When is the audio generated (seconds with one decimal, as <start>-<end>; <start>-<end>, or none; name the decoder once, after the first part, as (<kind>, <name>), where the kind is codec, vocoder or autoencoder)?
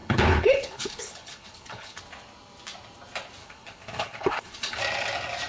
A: 0.0-2.0 (codec, HILCodec); 3.4-4.8